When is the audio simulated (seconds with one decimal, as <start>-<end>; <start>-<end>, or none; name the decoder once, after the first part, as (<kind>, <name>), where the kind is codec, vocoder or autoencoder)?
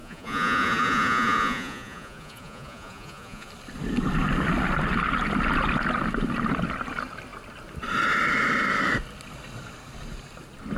0.0-3.5 (vocoder, Vocos)